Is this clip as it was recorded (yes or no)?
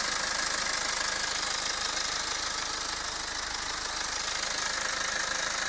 yes